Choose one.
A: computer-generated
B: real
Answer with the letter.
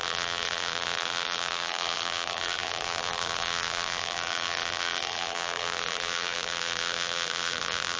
A